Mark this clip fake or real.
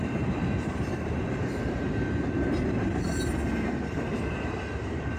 fake